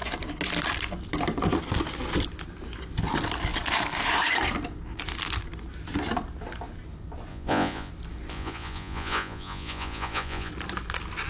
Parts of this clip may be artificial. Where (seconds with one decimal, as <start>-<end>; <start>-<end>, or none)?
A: 7.3-7.9; 8.3-10.5